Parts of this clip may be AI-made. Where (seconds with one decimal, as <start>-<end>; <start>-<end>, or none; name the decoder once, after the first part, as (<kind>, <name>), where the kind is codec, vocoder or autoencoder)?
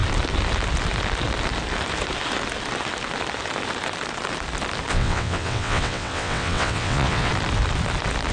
4.9-7.3 (vocoder, WaveNeXt)